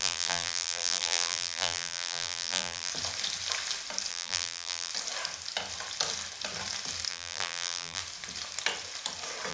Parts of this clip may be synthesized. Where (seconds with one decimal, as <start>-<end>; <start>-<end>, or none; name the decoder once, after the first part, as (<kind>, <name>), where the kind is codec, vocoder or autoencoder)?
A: 0.0-2.9 (vocoder, BigVGAN v2); 4.1-4.9; 7.1-8.0